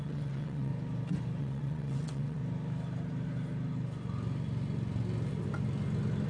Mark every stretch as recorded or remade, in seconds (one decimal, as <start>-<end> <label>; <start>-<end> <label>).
0.0-0.7 remade; 0.7-1.4 recorded; 1.4-2.4 remade; 2.4-6.3 recorded